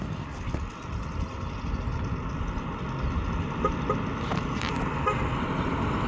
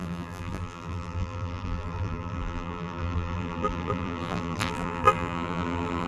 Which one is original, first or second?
first